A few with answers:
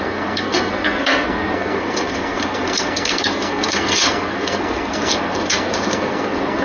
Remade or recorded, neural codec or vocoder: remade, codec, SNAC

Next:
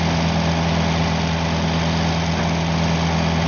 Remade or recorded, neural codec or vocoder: recorded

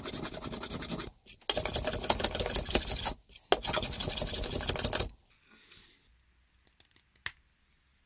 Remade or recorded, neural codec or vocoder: recorded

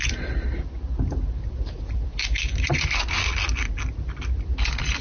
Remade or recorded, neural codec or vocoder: remade, vocoder, BigVGAN v2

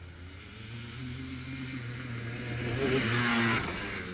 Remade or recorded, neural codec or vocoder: recorded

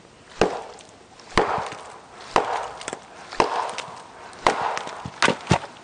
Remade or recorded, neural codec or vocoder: recorded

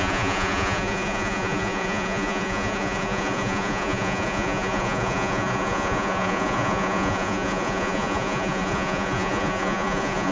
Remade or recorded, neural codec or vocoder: remade, vocoder, Vocos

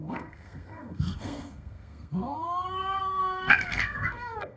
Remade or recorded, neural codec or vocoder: remade, codec, SNAC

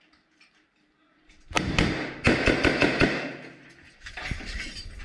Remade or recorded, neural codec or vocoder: remade, vocoder, BigVGAN v2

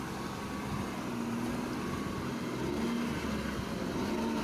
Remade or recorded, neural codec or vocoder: recorded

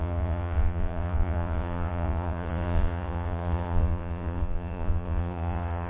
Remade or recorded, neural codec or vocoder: remade, vocoder, Vocos